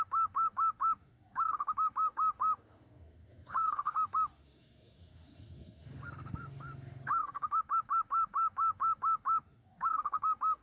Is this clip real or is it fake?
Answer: fake